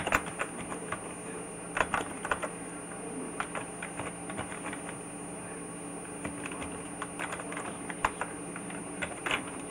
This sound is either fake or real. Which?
real